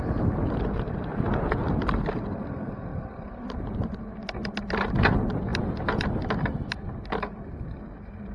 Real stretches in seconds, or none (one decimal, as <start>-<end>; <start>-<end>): 0.0-2.9; 4.9-8.3